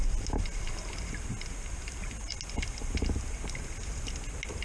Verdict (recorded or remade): recorded